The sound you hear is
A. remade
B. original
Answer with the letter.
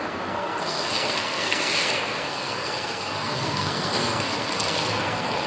A